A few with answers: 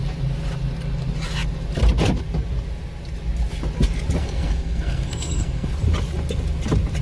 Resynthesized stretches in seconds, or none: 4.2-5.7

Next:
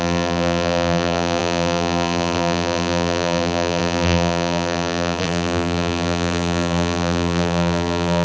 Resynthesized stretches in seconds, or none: 0.0-8.2

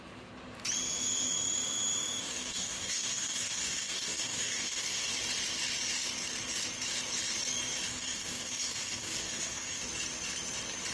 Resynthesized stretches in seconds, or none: 2.2-5.1; 7.9-9.8

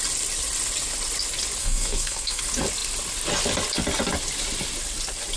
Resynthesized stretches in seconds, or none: 1.6-2.4

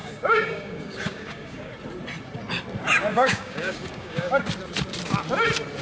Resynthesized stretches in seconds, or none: 0.0-1.7; 3.1-4.4

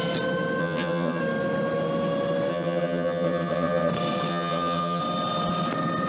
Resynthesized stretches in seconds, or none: 0.6-1.2; 2.5-3.9; 4.3-5.0

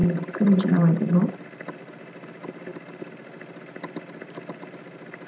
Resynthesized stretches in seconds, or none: 0.0-1.3; 2.7-4.7

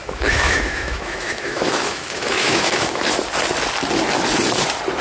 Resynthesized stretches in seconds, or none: 0.0-3.0